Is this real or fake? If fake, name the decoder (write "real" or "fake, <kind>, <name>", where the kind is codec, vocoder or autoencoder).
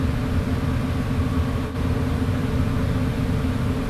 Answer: real